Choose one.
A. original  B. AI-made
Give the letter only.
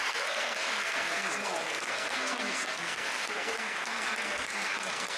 B